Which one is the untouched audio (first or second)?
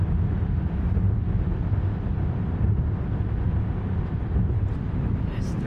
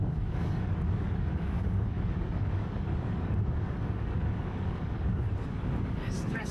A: first